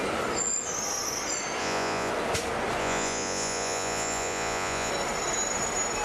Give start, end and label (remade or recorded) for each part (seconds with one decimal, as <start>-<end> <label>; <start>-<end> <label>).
0.0-1.6 recorded; 1.6-2.1 remade; 2.1-2.8 recorded; 2.8-4.9 remade; 4.9-6.0 recorded